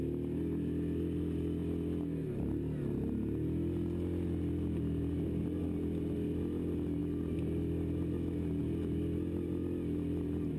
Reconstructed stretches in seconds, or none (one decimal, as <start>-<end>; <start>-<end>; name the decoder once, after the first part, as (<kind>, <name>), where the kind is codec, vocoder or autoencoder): none